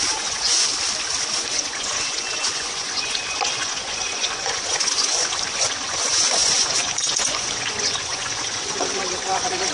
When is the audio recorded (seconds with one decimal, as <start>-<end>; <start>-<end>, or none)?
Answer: 0.7-1.3